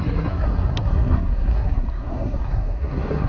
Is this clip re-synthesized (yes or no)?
yes